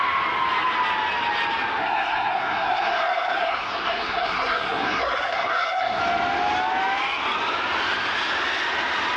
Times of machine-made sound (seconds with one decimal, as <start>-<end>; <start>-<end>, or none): 1.8-6.0